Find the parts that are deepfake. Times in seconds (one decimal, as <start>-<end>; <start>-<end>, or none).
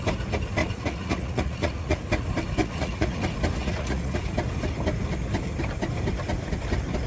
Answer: 0.6-2.0; 2.6-3.2; 3.6-4.1